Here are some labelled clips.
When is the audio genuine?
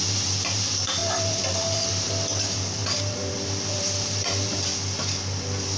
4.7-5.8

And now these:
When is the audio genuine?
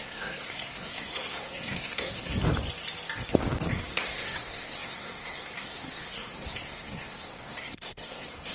2.4-3.7